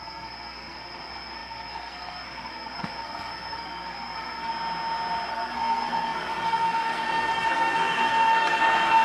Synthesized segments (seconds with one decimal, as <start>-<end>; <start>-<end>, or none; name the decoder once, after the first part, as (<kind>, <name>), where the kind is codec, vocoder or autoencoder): 0.0-4.5 (codec, SNAC); 5.3-9.0